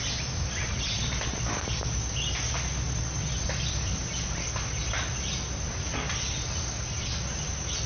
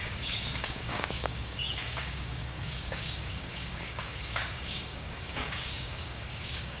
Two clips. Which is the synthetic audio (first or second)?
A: second